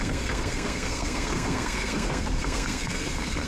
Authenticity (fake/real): fake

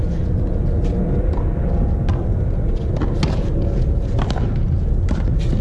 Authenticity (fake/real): real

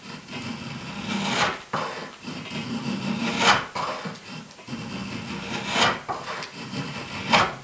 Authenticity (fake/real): real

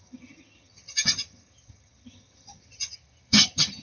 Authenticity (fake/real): fake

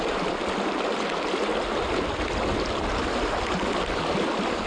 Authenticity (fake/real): real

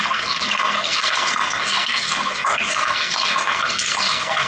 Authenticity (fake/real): fake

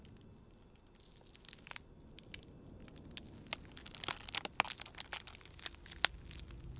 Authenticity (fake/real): real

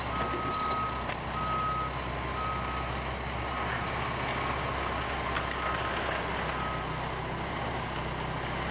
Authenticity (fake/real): real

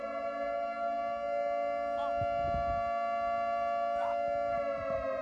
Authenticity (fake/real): real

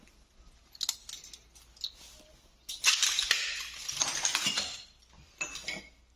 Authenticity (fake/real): real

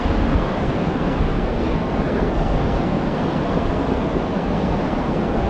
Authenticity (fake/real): fake